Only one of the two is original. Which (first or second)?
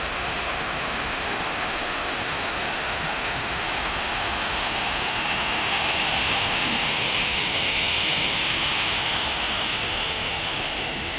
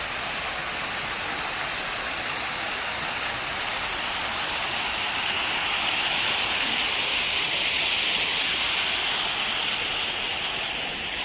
second